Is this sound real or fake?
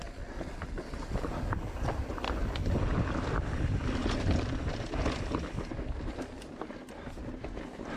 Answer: real